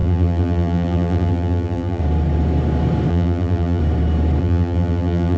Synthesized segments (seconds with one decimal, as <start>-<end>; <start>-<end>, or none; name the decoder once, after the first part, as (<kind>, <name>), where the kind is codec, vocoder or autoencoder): 0.0-2.0 (vocoder, BigVGAN v2); 3.1-3.8; 4.4-5.4